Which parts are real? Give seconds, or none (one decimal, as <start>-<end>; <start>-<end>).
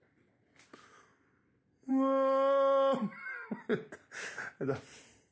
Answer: 0.0-5.3